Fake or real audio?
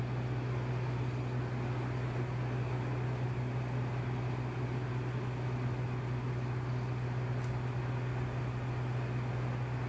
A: real